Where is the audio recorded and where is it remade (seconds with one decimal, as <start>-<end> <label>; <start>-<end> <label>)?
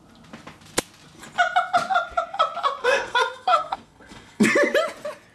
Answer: 0.0-2.8 recorded; 2.8-4.5 remade; 4.5-5.3 recorded